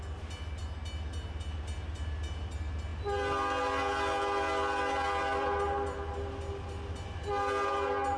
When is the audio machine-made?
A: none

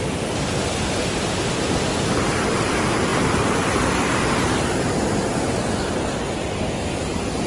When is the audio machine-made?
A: none

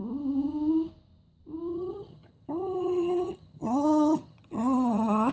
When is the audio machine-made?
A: 1.7-5.3 (vocoder, HiFi-GAN)